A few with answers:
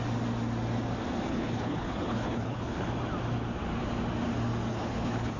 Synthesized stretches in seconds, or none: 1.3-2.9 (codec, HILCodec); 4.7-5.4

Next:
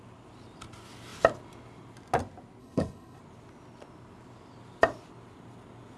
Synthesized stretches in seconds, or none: 2.6-3.2 (codec, HILCodec)

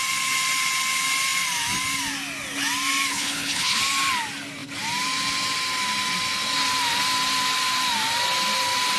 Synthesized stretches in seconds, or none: 3.1-3.8 (codec, HILCodec)

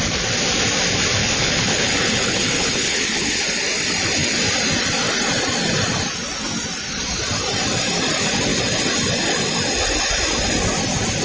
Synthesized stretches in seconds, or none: 1.2-3.4 (codec, HILCodec)

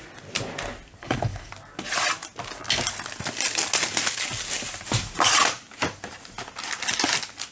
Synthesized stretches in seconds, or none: 1.0-1.5 (codec, HILCodec)

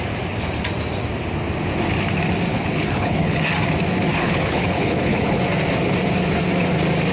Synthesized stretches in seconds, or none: 2.5-3.5 (codec, HILCodec); 4.1-5.4